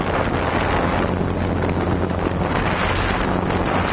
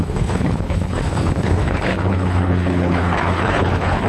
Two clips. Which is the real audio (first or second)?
first